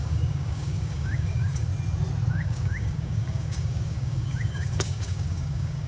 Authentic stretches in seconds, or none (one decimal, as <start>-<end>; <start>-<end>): 1.7-2.3